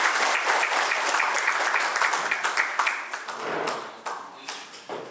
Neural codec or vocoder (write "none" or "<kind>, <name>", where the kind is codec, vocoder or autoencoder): none